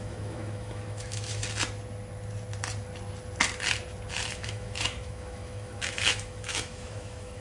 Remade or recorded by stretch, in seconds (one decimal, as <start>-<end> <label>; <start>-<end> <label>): 0.0-1.4 remade; 1.4-4.1 recorded; 4.1-7.4 remade